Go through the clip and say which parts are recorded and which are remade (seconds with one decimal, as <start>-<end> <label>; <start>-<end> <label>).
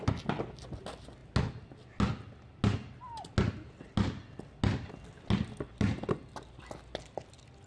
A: 0.0-7.7 recorded